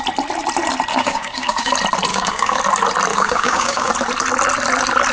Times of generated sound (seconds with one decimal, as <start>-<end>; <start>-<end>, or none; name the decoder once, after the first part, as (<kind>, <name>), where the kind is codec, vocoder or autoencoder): 0.9-1.7 (codec, DAC); 2.1-2.6; 3.1-3.9